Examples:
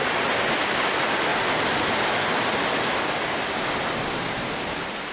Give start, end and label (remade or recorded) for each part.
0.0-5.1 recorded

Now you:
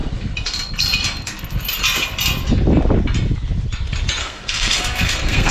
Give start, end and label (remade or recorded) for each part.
0.0-4.2 recorded; 4.2-5.5 remade

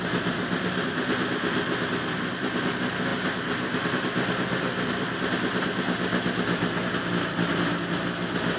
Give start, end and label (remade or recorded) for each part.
0.0-8.6 recorded

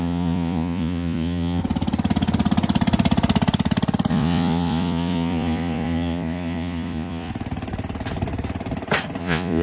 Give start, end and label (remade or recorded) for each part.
0.0-1.6 remade; 1.6-4.1 recorded; 4.1-7.3 remade; 7.3-9.2 recorded; 9.2-9.6 remade

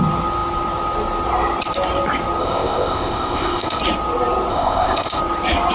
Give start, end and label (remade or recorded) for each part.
0.0-2.4 recorded; 2.4-3.8 remade; 3.8-4.5 recorded; 4.5-5.2 remade; 5.2-5.7 recorded